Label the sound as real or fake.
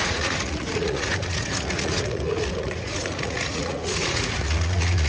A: fake